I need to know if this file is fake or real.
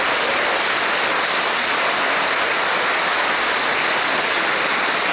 real